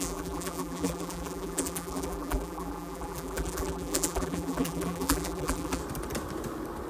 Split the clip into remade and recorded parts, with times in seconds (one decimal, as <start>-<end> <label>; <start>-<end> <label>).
0.0-5.8 remade; 5.8-6.9 recorded